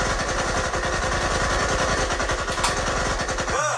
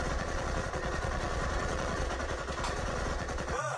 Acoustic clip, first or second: first